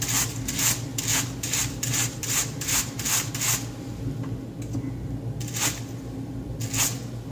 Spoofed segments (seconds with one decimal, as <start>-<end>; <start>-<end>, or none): 1.1-3.3